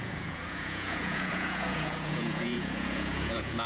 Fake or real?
fake